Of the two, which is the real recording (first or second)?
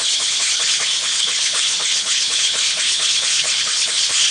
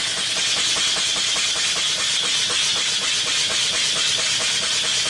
second